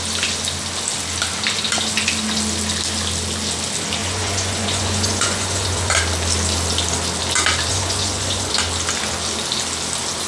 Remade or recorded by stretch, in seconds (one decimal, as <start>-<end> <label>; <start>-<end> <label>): 0.0-4.0 recorded; 4.0-5.9 remade; 5.9-7.7 recorded; 7.7-8.5 remade; 8.5-10.3 recorded

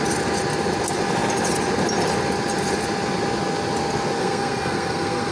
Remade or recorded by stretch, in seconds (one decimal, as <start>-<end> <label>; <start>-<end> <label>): 0.0-4.2 recorded; 4.2-5.3 remade

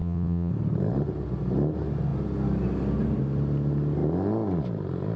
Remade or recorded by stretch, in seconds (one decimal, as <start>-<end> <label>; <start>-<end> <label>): 0.0-0.5 remade; 0.5-5.2 recorded

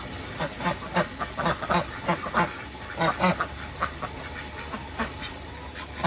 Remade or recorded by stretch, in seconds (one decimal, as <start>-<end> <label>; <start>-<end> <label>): 0.0-6.1 recorded

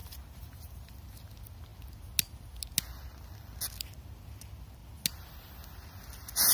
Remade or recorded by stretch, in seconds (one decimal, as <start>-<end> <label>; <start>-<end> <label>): 0.0-0.9 remade; 0.9-6.5 recorded

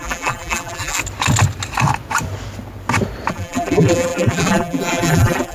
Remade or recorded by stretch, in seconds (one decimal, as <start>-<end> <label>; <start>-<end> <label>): 0.0-1.0 remade; 1.0-3.3 recorded; 3.3-5.5 remade